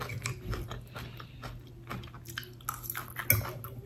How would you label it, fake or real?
real